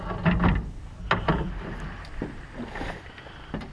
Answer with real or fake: real